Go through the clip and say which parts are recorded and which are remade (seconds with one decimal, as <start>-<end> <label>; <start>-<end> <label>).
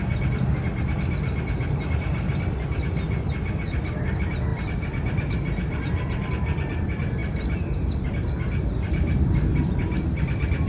0.0-4.5 recorded; 4.5-6.3 remade; 6.3-7.2 recorded; 7.2-10.7 remade